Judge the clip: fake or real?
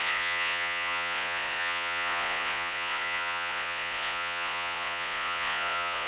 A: fake